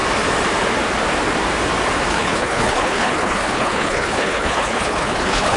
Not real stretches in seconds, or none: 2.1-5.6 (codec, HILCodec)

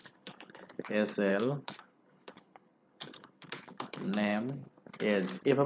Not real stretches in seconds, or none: 0.0-0.9 (codec, HILCodec); 1.3-4.7

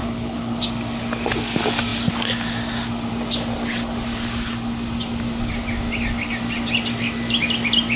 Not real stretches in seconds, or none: 0.0-0.6 (codec, HILCodec)

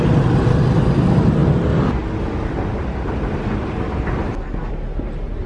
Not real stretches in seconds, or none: none

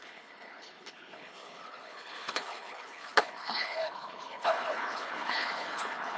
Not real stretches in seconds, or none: 0.0-6.2 (codec, HILCodec)

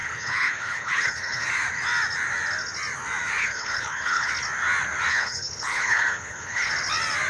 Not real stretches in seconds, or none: 0.0-1.5 (codec, HILCodec); 3.4-4.3; 5.1-6.7

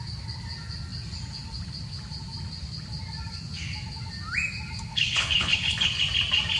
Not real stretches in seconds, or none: 4.9-6.0 (codec, HILCodec)

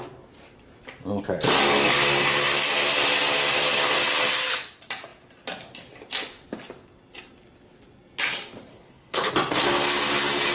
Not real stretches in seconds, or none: 8.7-9.3 (codec, HILCodec)